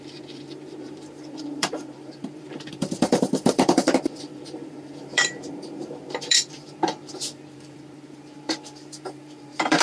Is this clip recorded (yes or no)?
no